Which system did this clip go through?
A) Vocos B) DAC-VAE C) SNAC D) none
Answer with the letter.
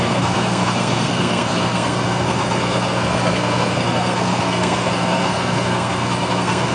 C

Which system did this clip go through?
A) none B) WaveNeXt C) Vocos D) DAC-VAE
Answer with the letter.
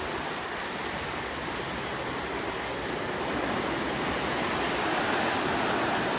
A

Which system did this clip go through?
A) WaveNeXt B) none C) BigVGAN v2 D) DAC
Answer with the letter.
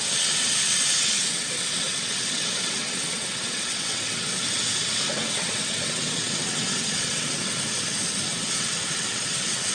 A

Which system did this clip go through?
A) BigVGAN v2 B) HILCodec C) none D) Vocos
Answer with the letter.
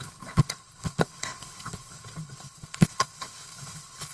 B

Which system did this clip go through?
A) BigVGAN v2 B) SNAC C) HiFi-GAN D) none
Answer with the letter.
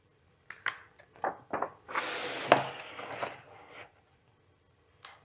D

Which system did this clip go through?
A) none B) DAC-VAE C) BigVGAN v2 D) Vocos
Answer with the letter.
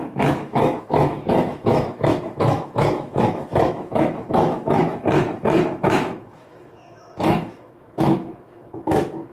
B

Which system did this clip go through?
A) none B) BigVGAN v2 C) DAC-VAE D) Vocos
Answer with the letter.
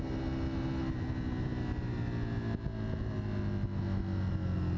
A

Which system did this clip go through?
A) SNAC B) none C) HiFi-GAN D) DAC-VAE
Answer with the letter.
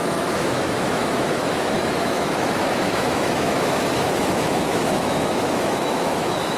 D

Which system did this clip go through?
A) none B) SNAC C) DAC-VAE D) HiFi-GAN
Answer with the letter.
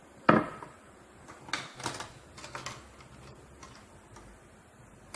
A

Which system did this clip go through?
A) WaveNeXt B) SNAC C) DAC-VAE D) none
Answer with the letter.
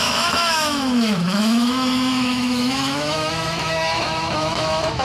C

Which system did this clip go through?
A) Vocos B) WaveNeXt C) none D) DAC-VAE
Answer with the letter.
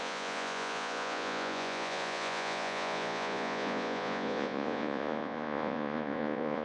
A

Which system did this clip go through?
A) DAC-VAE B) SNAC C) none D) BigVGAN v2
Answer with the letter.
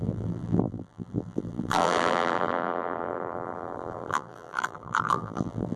D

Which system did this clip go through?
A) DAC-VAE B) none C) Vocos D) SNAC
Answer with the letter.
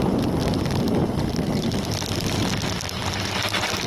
B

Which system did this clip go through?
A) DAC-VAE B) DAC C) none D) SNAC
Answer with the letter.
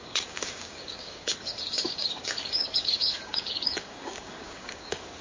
B